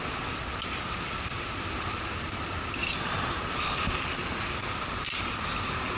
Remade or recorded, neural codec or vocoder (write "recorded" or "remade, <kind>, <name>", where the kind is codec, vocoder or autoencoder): recorded